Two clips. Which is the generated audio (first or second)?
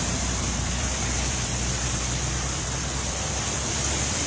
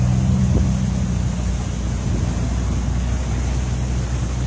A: first